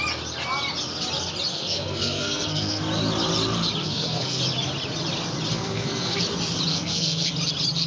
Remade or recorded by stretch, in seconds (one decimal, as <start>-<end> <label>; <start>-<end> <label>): 0.0-1.5 recorded; 1.5-2.8 remade; 2.8-3.8 recorded; 3.8-4.4 remade; 4.4-5.5 recorded; 5.5-6.2 remade; 6.2-6.7 recorded; 6.7-7.3 remade; 7.3-7.9 recorded